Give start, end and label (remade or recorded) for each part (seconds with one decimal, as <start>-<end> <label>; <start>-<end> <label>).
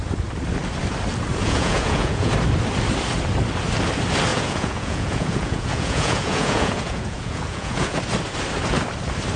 0.0-1.4 recorded; 1.4-2.3 remade; 2.3-4.3 recorded; 4.3-8.0 remade; 8.0-9.4 recorded